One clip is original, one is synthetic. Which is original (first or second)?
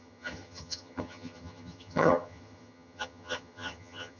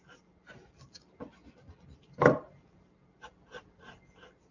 second